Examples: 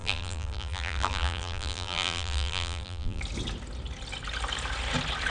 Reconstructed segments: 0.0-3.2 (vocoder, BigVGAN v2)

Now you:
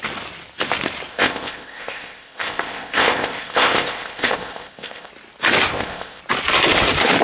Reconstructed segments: 1.1-5.1 (codec, ZipCodec); 5.7-6.2

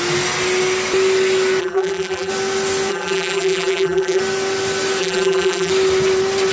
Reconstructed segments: 1.6-2.3 (vocoder, BigVGAN v2); 2.9-4.2; 5.0-5.7